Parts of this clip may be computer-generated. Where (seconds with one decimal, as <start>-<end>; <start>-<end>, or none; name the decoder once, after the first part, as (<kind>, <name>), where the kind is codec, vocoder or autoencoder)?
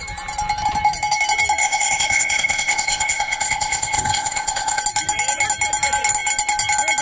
1.6-4.8 (codec, ZipCodec)